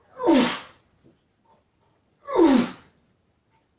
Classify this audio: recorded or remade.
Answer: recorded